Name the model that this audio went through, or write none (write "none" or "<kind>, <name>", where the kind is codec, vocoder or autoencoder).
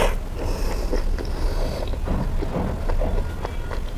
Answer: none